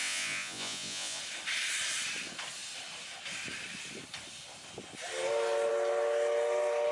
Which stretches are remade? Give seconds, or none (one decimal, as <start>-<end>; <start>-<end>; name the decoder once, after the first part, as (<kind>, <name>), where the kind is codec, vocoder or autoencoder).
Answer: 0.0-1.2 (vocoder, Vocos)

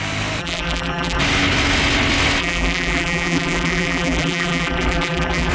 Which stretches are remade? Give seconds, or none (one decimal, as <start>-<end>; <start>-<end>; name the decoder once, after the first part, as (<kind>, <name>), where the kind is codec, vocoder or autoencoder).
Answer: 0.4-1.2 (vocoder, BigVGAN v2); 2.4-5.5

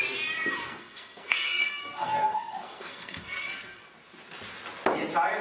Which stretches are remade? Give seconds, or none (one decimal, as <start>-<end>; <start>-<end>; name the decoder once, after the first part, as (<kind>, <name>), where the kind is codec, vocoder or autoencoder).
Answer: 0.6-3.8 (codec, SNAC)

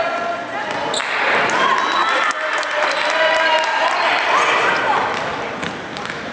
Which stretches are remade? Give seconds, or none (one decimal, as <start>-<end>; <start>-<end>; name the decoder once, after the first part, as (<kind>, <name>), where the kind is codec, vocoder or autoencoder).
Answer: none

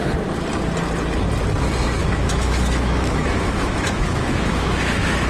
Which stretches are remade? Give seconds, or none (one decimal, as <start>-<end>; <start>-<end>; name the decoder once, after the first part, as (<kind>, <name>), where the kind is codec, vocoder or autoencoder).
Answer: 2.0-5.3 (autoencoder, DAC-VAE)

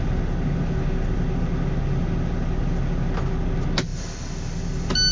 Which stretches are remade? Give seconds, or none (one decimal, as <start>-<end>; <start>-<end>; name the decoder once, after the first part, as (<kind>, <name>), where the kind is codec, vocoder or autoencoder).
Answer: none

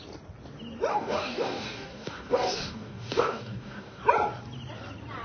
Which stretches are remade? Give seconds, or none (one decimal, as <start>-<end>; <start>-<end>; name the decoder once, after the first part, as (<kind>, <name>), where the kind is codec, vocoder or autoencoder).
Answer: 0.9-4.0 (codec, DAC)

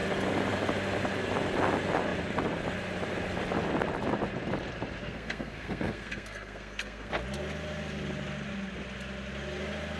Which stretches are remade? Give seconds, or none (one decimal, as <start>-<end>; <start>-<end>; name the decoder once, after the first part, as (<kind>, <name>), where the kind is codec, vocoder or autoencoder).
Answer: 5.0-7.1 (codec, SNAC)